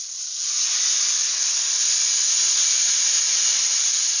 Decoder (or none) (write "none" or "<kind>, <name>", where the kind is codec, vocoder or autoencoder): none